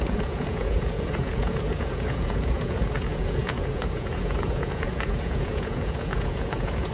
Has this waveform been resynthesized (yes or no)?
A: yes